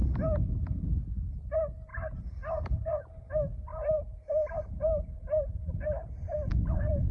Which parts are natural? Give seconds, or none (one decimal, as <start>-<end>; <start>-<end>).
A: 0.0-1.9; 2.9-3.7